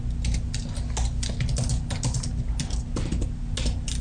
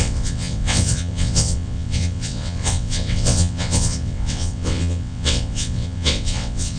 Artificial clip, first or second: second